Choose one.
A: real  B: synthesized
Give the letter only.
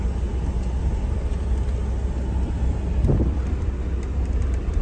A